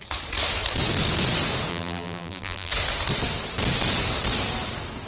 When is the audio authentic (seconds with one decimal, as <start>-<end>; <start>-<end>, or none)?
0.0-1.7; 2.7-5.1